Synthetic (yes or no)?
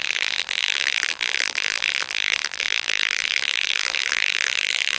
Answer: yes